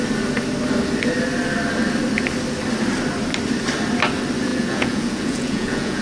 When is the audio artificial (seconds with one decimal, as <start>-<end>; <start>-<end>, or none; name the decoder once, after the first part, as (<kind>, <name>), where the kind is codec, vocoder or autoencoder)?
4.5-6.0 (vocoder, Vocos)